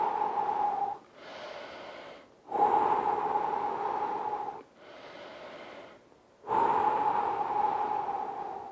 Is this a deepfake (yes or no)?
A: no